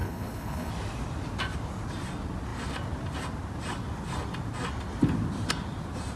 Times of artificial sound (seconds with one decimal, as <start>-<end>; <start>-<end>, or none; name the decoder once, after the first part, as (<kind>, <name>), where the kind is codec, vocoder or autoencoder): 0.0-0.7 (codec, HILCodec)

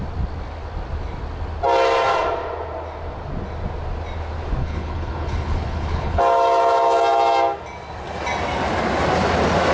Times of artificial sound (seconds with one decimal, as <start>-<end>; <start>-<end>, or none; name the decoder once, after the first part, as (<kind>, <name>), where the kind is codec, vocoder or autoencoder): 4.6-6.2 (codec, HILCodec)

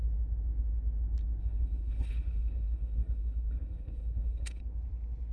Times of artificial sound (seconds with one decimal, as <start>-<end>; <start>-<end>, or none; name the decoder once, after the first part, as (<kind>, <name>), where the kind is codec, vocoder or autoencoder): 1.4-4.6 (codec, HILCodec)

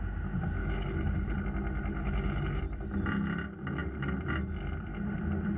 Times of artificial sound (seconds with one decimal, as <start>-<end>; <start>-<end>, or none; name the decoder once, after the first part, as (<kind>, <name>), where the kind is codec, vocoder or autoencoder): 0.6-1.4 (codec, HILCodec); 1.9-2.6

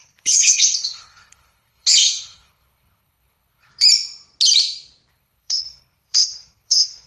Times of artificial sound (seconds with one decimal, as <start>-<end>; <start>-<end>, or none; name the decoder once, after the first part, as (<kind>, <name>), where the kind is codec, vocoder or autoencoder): 0.0-3.7 (codec, HILCodec); 5.1-7.1

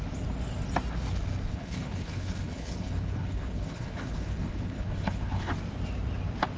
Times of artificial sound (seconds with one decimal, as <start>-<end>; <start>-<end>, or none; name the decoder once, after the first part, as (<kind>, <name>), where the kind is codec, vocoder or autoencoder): 1.5-5.5 (codec, HILCodec)

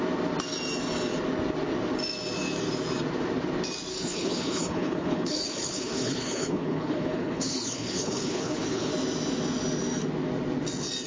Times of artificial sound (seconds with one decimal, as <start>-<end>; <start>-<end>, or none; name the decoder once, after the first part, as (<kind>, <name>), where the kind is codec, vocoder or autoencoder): 3.9-8.9 (codec, HILCodec)